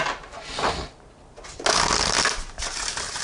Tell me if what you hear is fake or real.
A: real